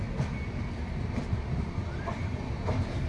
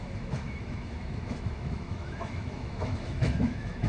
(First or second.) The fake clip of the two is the second